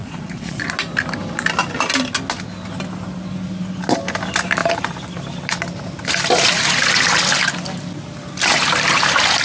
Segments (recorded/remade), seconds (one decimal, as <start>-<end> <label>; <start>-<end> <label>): 0.0-0.6 remade; 0.6-9.4 recorded